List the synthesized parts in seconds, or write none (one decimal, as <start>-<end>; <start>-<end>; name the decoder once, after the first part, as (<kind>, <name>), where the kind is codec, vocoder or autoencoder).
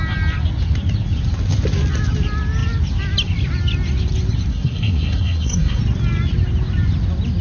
4.5-5.8 (codec, SNAC)